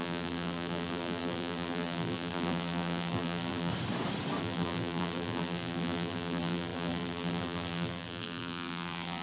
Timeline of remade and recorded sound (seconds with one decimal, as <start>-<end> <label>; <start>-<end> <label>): 0.0-3.7 remade; 3.7-4.4 recorded; 4.4-9.2 remade